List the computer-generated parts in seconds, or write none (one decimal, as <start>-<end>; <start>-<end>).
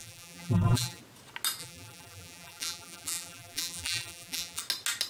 0.0-1.0; 1.6-4.6